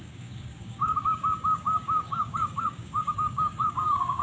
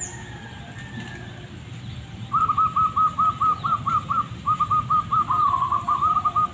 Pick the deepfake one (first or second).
first